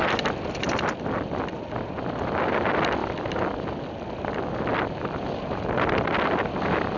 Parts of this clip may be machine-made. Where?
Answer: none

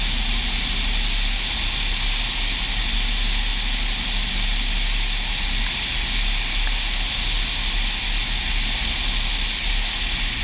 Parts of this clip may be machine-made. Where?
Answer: none